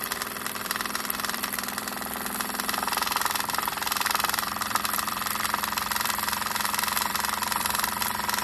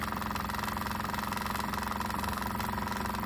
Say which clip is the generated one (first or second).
first